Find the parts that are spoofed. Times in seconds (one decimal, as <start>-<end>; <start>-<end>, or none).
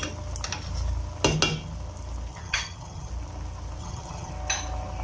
2.3-3.1; 3.8-4.3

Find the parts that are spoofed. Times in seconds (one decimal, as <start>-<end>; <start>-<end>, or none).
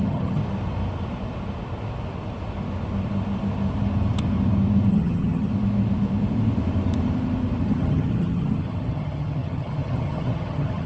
0.0-0.4; 4.9-5.5; 7.6-10.9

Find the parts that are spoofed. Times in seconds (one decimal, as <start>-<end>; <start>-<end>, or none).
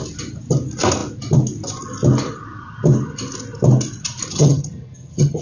4.3-5.4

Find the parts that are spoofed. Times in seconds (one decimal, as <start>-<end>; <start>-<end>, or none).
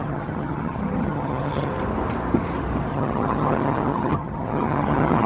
0.0-1.7; 2.9-5.3